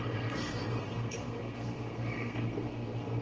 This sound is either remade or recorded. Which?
remade